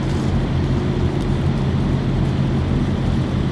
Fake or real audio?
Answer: real